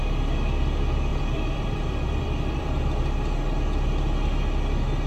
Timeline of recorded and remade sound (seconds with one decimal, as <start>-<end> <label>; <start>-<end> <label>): 0.0-1.1 recorded; 1.1-3.0 remade; 3.0-5.1 recorded